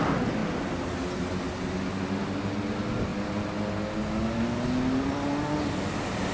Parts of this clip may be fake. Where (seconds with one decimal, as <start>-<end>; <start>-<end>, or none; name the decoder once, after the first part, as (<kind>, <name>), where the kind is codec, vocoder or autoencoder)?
none

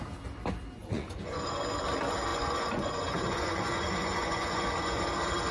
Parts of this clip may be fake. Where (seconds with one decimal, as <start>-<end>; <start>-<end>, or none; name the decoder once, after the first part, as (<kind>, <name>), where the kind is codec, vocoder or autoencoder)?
0.8-1.6 (vocoder, Vocos); 2.3-5.0

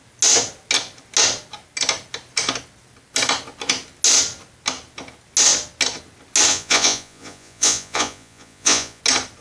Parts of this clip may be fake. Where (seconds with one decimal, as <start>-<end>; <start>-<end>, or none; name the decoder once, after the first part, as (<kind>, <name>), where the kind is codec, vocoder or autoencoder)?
6.5-9.0 (vocoder, Vocos)

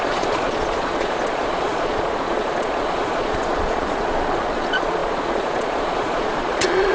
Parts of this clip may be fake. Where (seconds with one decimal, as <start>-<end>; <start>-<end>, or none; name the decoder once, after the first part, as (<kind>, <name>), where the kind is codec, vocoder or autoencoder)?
0.0-6.9 (vocoder, Vocos)

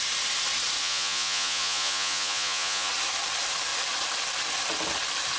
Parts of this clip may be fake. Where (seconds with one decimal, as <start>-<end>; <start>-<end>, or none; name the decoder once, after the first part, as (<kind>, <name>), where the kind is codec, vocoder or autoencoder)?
0.8-2.9 (vocoder, Vocos)

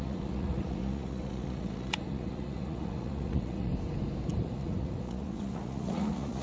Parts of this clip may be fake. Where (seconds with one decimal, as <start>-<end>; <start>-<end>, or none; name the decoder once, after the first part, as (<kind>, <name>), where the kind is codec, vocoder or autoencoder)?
0.0-3.7 (vocoder, Vocos); 4.3-6.4

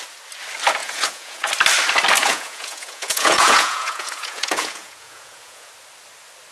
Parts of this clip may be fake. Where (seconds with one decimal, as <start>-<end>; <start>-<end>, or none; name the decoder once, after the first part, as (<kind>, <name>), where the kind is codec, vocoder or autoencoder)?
0.8-1.5 (vocoder, Vocos); 2.2-5.7